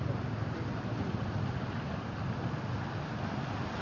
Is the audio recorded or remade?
recorded